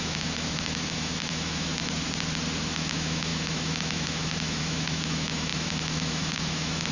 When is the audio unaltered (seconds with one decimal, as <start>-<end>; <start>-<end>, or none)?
1.7-2.6

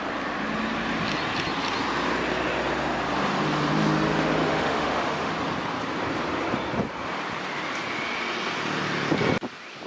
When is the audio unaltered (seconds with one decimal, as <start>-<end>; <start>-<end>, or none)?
0.0-4.4; 5.3-9.9

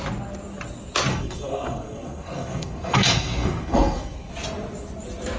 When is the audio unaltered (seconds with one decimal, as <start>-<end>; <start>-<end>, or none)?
0.0-1.1; 4.3-5.4